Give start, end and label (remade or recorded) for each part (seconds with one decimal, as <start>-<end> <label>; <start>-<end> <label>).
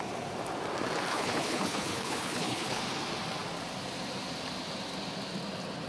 0.0-1.1 recorded; 1.1-2.8 remade; 2.8-5.9 recorded